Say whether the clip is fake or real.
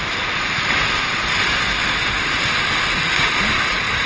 real